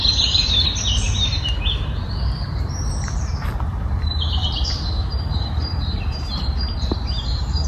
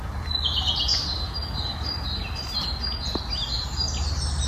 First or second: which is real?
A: second